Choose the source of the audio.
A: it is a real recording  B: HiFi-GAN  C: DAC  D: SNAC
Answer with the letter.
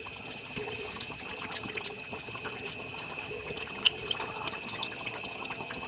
B